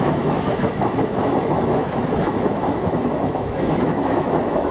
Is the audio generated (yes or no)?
yes